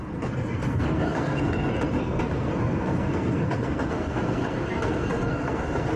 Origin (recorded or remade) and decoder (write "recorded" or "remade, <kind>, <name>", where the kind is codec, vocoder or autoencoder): remade, codec, SNAC